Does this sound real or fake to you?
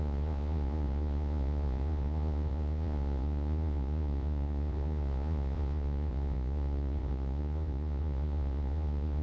fake